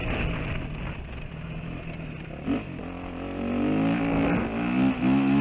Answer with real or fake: real